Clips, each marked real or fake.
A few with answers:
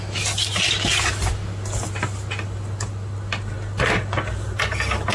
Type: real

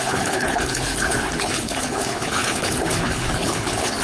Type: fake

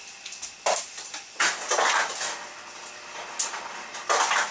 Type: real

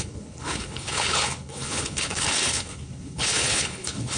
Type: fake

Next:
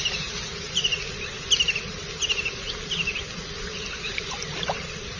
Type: real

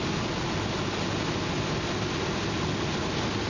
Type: real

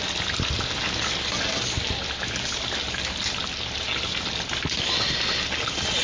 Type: real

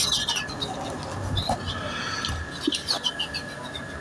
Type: real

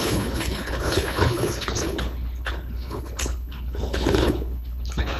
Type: fake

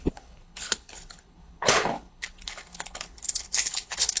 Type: fake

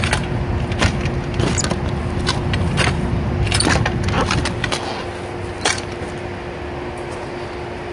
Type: real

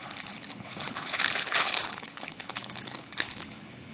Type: fake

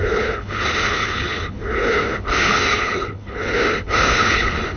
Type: fake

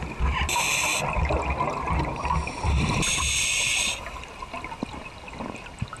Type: real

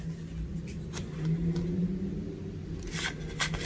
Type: real